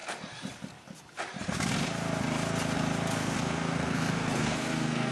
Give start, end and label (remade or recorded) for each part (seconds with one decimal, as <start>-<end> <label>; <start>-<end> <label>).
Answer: 0.0-3.1 recorded; 3.1-5.1 remade